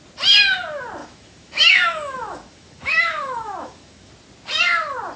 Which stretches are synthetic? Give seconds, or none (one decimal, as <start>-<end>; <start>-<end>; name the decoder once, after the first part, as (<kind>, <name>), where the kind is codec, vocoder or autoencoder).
1.0-4.1 (autoencoder, DAC-VAE)